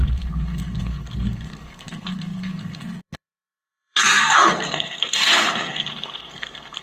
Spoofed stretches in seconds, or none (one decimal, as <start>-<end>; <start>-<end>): 0.0-6.8